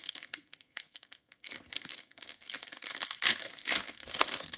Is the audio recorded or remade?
remade